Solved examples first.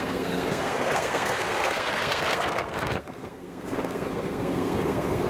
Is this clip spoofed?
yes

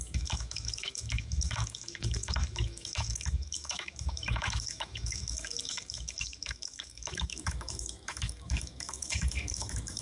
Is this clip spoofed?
yes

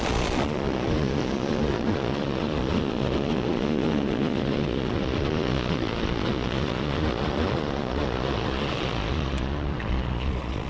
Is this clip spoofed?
yes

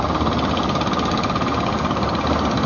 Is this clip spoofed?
no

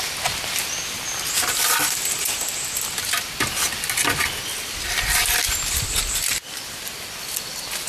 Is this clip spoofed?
no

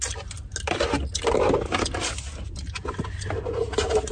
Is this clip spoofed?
no